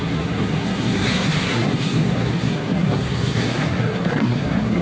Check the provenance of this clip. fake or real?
fake